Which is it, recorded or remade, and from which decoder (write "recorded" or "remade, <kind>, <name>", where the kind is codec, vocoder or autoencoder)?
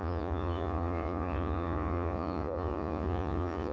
remade, vocoder, Vocos